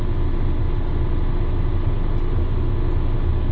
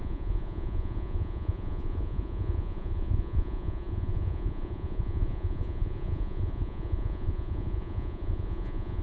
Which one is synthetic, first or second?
second